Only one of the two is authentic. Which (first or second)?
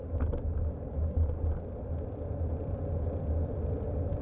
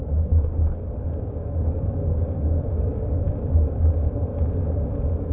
first